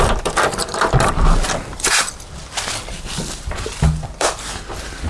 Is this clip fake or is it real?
fake